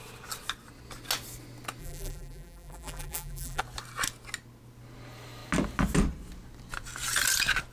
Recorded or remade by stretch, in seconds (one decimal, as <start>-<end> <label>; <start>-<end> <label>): 0.0-1.8 recorded; 1.8-3.6 remade; 3.6-7.7 recorded